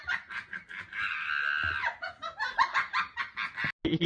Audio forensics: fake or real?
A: real